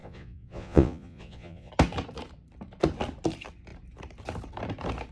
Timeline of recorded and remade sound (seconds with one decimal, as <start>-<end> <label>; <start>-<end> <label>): 0.0-1.7 remade; 1.7-5.1 recorded